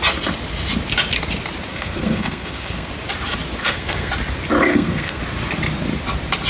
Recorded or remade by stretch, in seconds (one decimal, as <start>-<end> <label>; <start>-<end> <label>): 0.0-1.7 recorded; 1.7-2.9 remade; 2.9-3.6 recorded; 3.6-4.1 remade; 4.1-4.7 recorded; 4.7-5.2 remade; 5.2-6.5 recorded